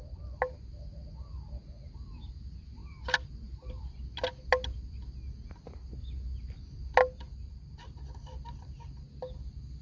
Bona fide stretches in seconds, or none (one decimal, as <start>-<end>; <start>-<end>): 0.0-9.8